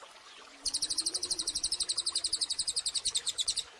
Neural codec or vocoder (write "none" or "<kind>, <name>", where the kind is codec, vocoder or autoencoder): vocoder, Vocos